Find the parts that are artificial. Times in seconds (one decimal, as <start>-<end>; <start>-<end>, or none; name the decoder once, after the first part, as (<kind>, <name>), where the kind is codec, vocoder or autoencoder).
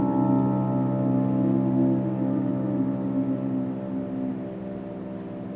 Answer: none